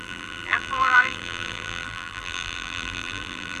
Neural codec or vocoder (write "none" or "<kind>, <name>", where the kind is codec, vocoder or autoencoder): vocoder, BigVGAN v2